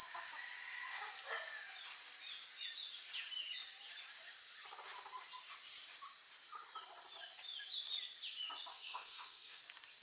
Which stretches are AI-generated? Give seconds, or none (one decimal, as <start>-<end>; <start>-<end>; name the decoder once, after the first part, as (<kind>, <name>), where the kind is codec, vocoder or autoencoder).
8.7-9.6 (codec, SNAC)